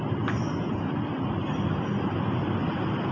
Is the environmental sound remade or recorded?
recorded